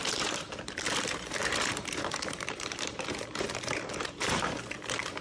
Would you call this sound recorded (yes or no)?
no